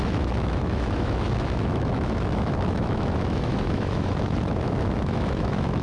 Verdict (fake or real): fake